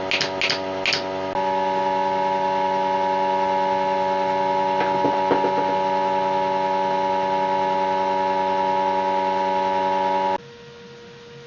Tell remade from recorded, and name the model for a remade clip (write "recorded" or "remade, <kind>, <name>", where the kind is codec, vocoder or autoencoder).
recorded